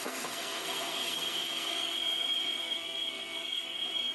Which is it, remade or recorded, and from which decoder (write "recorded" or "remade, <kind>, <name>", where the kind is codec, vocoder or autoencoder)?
remade, codec, SNAC